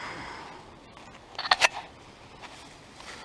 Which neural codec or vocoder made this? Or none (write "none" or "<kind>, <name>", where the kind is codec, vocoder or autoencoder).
none